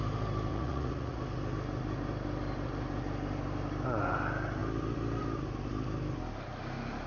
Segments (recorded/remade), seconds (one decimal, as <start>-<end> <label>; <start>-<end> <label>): 0.0-0.5 recorded; 0.5-1.2 remade; 1.2-7.1 recorded